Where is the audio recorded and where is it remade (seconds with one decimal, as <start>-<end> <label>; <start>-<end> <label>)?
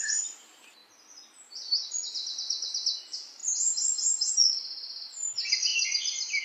0.0-6.4 recorded